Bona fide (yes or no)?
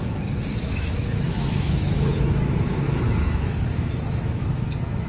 no